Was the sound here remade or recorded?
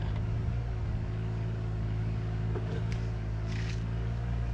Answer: remade